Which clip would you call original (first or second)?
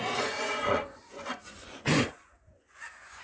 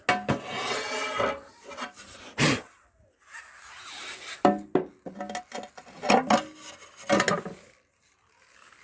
second